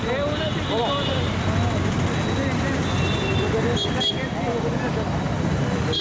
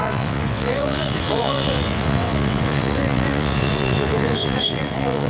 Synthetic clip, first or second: second